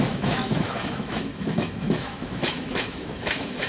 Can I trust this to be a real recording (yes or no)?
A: no